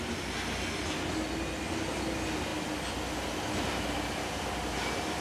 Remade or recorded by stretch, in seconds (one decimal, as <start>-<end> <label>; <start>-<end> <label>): 0.0-5.2 recorded